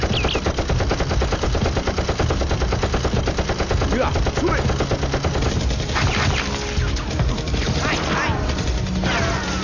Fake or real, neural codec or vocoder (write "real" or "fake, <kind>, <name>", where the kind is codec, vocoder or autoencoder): real